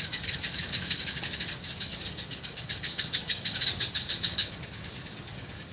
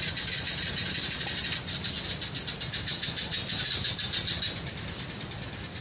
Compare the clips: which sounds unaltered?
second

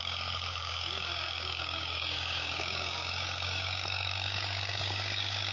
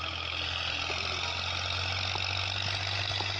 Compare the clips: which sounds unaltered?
second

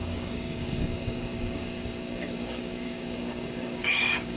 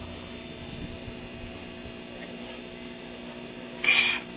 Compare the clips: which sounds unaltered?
second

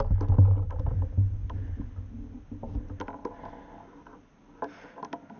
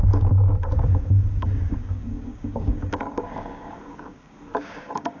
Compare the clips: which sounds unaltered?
first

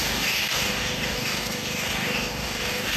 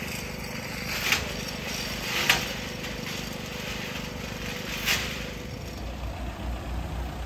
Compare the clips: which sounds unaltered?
second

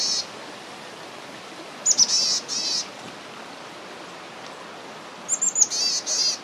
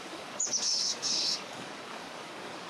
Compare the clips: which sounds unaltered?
first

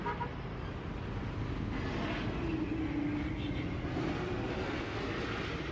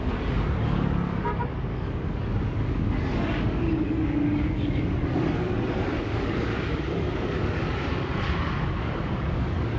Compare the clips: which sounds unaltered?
first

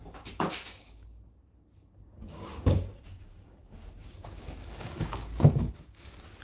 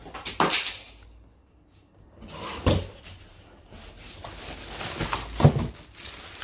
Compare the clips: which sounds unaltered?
second